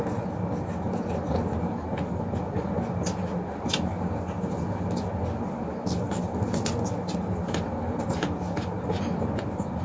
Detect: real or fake real